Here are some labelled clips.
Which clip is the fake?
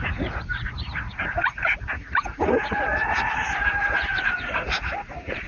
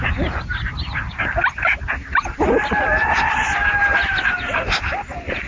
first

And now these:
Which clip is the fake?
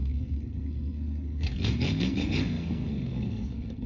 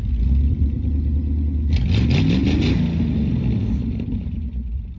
first